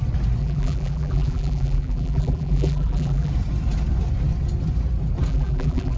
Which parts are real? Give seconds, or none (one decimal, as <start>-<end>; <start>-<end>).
0.0-0.4; 3.3-5.3